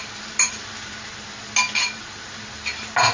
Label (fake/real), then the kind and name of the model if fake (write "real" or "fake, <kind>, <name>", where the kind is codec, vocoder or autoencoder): real